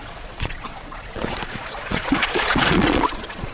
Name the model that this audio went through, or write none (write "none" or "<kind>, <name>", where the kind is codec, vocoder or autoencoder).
vocoder, Vocos